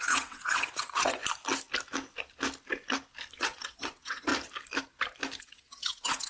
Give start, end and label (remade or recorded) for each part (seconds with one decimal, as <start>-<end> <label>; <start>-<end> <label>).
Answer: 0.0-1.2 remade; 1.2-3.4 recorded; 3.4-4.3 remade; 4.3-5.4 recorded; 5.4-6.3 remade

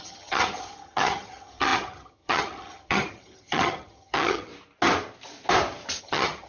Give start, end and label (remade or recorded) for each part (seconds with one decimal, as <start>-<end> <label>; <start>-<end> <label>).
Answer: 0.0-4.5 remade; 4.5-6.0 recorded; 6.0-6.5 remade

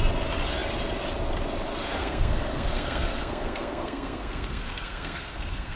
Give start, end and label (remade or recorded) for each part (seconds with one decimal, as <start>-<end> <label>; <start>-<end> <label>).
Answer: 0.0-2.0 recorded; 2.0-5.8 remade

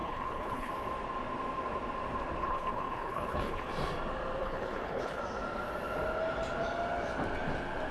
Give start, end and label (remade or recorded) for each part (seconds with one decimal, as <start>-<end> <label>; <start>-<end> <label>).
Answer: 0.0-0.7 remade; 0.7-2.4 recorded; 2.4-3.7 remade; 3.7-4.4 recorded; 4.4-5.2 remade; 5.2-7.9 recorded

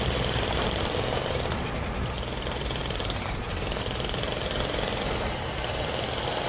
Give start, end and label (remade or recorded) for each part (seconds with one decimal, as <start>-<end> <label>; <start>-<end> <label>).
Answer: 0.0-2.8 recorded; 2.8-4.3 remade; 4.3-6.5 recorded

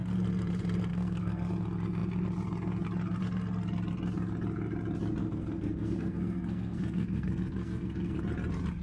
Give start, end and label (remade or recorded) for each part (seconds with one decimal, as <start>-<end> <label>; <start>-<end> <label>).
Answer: 0.0-0.9 recorded; 0.9-1.5 remade; 1.5-5.2 recorded; 5.2-8.2 remade; 8.2-8.8 recorded

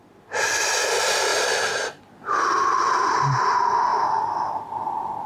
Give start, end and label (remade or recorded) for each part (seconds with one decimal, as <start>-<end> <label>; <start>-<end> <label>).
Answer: 0.0-3.9 recorded; 3.9-4.5 remade; 4.5-5.3 recorded

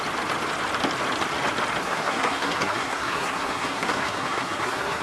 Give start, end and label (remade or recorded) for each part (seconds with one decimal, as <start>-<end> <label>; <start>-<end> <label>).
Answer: 0.0-1.8 recorded; 1.8-5.0 remade